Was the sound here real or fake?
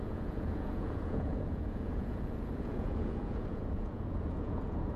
fake